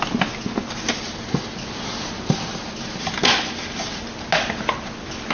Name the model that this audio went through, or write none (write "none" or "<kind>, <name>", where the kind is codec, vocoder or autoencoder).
none